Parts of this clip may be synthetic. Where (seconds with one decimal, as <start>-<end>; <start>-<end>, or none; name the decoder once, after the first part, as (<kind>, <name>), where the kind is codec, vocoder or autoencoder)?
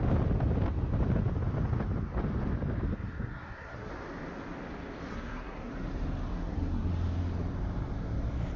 2.9-3.9 (codec, SNAC); 5.1-5.7; 6.3-6.9